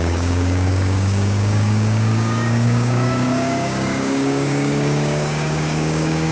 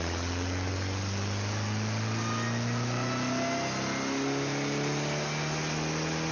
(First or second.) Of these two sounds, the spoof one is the first